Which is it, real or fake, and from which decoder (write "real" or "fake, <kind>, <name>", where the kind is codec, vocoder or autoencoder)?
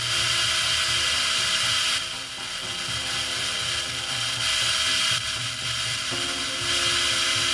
real